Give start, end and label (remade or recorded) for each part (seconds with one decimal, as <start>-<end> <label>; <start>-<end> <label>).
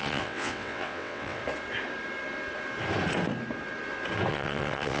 0.0-1.4 remade; 1.4-4.3 recorded; 4.3-5.0 remade